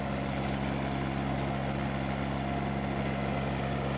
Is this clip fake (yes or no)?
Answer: no